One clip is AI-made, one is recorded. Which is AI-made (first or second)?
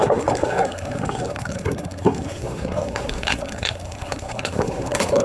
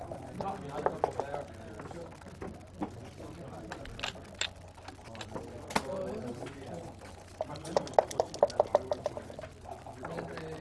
first